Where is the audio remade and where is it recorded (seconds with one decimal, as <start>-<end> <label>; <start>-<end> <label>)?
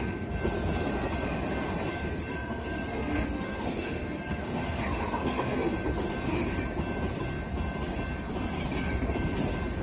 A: 0.0-2.3 recorded; 2.3-5.7 remade; 5.7-9.8 recorded